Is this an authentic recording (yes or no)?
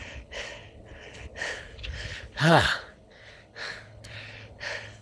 no